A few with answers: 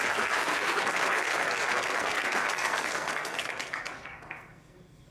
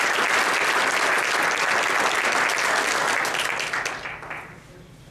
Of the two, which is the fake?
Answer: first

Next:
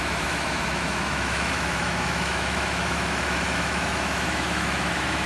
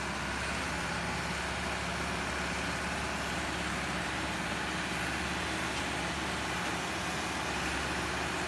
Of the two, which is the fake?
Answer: first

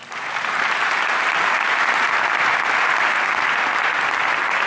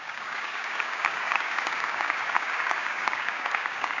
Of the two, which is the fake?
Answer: second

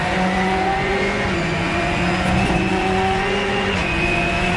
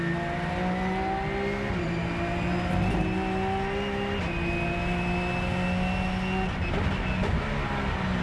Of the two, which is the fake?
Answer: first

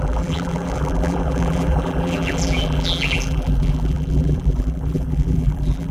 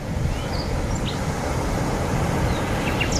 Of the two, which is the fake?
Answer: first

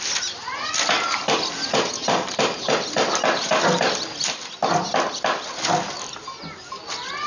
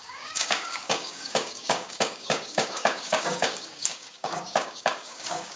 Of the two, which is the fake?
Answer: second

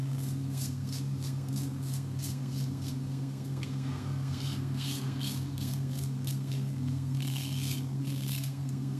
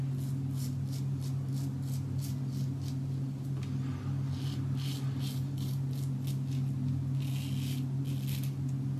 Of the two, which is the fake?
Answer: first